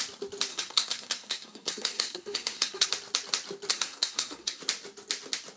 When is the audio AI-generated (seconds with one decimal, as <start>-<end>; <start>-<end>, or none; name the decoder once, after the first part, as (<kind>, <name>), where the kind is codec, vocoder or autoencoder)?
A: 0.5-2.9 (codec, SNAC); 3.7-4.6